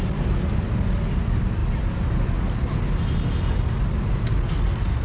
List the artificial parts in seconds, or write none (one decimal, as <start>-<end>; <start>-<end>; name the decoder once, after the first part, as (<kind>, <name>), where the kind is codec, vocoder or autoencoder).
none

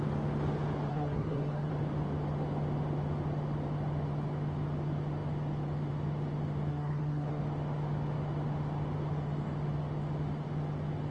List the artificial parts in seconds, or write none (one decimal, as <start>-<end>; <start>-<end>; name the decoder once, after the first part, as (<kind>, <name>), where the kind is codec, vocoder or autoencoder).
0.9-1.7 (codec, SNAC); 6.7-7.4